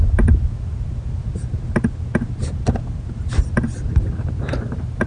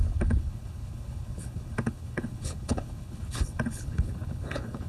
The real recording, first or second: first